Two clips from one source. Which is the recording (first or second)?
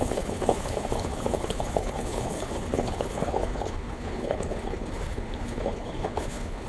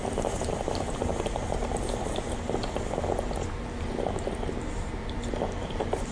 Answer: second